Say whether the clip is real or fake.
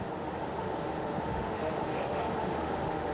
fake